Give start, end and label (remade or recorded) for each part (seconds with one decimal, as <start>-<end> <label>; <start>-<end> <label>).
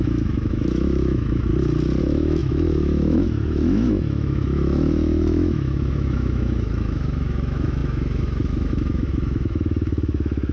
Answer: 0.0-1.5 remade; 1.5-2.0 recorded; 2.0-10.5 remade